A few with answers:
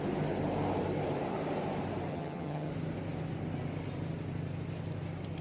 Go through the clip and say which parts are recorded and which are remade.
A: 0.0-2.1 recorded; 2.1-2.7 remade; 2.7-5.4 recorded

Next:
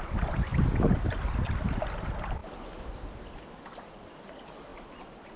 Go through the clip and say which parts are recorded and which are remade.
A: 0.0-5.4 recorded

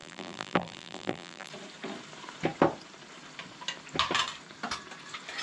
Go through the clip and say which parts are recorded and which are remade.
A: 0.0-1.5 remade; 1.5-5.4 recorded